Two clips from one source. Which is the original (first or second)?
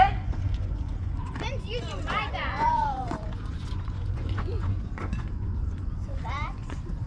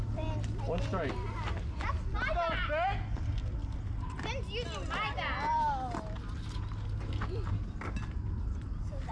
second